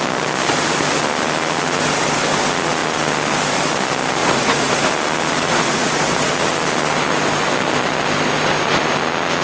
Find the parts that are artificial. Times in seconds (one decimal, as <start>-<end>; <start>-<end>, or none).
4.2-4.9; 5.5-6.3